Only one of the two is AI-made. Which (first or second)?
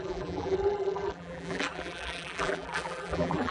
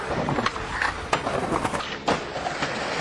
first